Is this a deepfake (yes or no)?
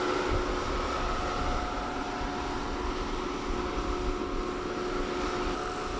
no